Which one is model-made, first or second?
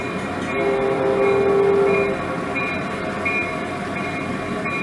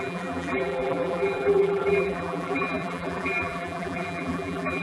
second